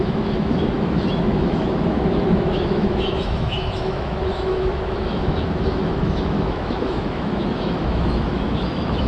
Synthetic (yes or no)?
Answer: yes